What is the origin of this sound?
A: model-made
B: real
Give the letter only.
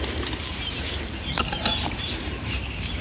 A